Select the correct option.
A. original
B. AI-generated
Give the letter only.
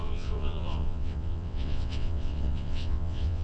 B